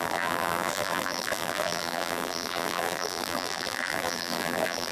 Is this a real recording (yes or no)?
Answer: no